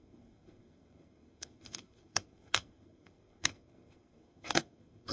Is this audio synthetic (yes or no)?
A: yes